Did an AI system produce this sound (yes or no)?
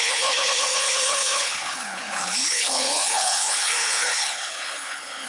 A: yes